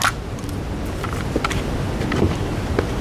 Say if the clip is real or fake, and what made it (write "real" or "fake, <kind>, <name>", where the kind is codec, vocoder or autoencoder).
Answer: real